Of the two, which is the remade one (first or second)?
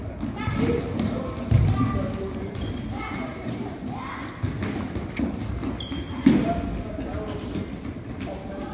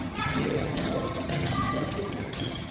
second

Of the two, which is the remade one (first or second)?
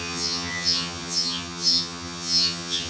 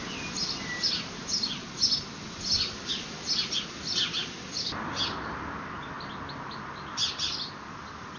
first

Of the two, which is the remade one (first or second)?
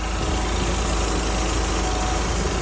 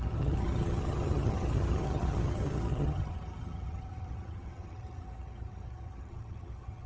second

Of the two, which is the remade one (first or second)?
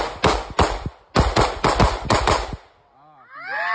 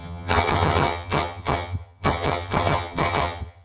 second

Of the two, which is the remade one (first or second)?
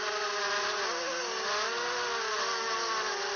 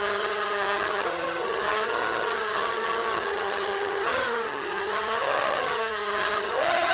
second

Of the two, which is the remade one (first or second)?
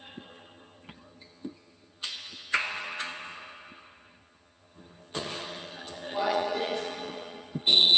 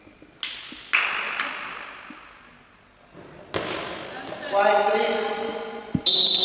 first